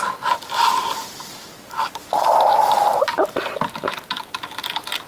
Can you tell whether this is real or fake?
real